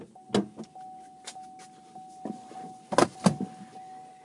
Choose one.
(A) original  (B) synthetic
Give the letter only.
A